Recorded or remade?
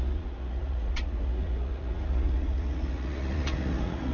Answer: remade